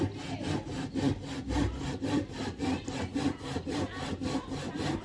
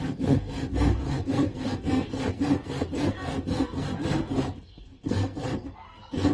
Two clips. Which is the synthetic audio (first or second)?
second